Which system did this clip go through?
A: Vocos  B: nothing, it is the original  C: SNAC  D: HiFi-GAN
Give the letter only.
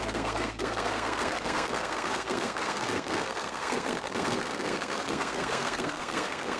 C